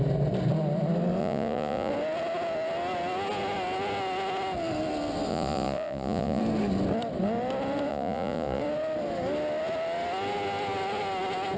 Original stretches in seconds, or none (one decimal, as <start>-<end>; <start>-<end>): 0.0-1.2; 1.9-5.3; 6.4-7.9; 8.6-11.6